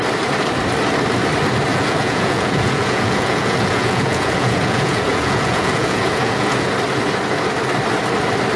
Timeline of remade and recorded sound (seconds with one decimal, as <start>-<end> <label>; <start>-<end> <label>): 0.0-1.7 recorded; 1.7-6.7 remade; 6.7-8.6 recorded